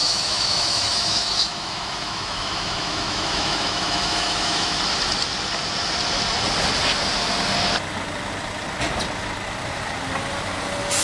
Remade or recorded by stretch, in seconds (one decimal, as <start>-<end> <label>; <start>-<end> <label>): 0.0-4.8 remade; 4.8-11.0 recorded